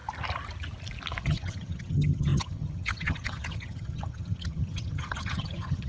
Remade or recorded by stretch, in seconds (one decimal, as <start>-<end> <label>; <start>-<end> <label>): 0.0-1.2 recorded; 1.2-5.9 remade